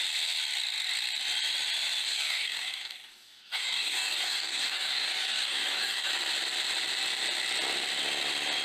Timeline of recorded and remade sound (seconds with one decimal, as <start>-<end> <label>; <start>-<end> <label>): 0.0-2.0 recorded; 2.0-6.1 remade; 6.1-8.6 recorded